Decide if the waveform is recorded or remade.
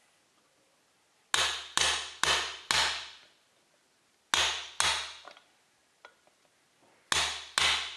recorded